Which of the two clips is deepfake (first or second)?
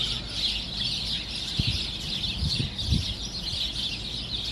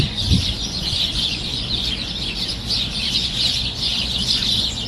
second